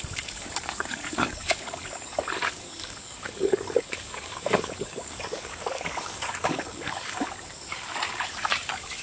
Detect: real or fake fake